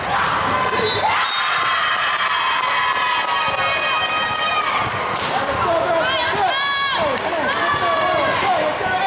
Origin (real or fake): real